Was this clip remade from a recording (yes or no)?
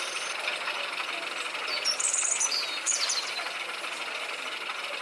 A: yes